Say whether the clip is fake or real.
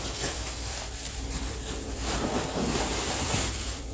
fake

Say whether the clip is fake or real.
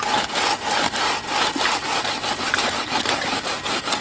fake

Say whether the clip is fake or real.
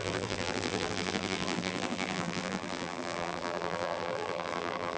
fake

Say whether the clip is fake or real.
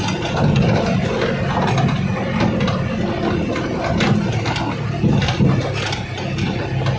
real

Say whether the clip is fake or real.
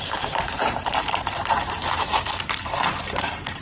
fake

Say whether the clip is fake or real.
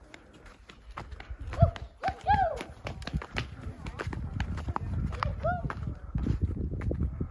real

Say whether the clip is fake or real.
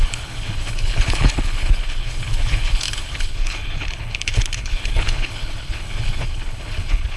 fake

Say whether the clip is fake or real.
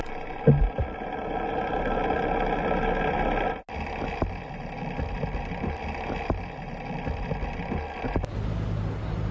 real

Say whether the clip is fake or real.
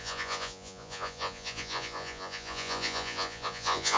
fake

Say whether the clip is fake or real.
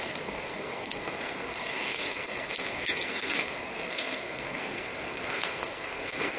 fake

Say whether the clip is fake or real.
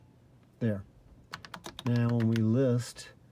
real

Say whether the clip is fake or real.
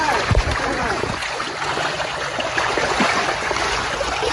fake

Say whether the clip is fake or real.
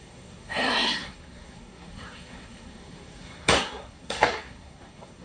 fake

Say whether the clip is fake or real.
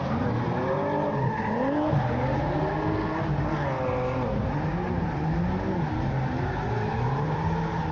real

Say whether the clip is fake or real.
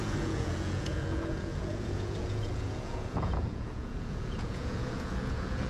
fake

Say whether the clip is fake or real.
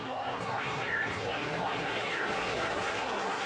fake